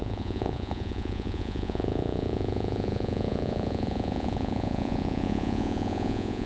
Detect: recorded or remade remade